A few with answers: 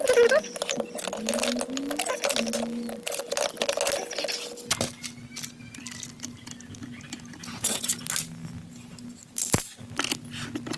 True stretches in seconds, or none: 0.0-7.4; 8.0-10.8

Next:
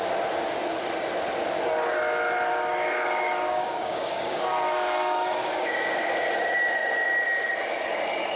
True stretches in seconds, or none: 0.0-2.5; 6.1-8.4

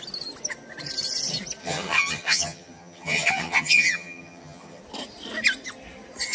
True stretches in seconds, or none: 0.0-1.6; 4.8-6.3

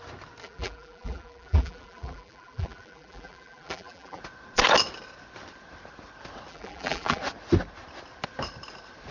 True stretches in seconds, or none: 0.0-0.4; 4.2-6.5; 7.2-9.1

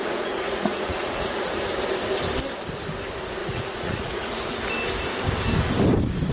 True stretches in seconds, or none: 1.6-3.4; 4.6-6.3

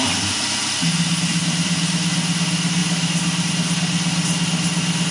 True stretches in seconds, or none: 0.0-1.3; 1.9-2.8; 3.5-5.1

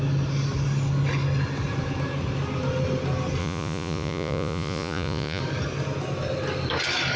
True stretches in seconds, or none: 0.0-3.4; 5.4-7.2

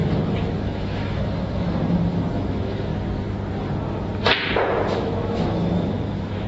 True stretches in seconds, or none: 2.9-4.5